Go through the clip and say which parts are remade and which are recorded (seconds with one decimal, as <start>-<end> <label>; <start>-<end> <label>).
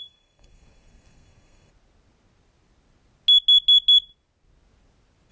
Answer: 0.0-1.7 remade; 1.7-5.3 recorded